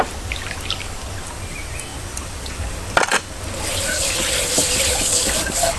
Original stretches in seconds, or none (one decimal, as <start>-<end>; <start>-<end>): 0.0-5.8